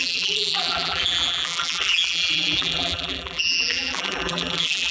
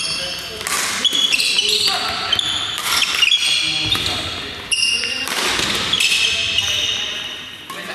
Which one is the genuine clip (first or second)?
second